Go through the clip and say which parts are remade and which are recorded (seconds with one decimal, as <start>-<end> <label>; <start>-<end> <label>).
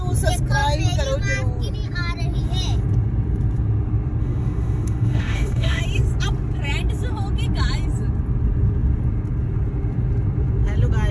0.0-4.2 recorded; 4.2-5.8 remade; 5.8-11.1 recorded